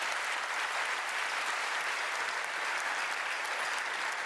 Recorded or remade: recorded